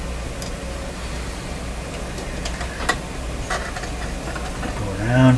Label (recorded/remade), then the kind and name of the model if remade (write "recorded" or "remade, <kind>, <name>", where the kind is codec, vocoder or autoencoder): recorded